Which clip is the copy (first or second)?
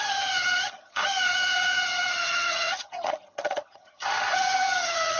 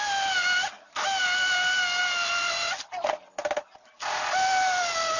first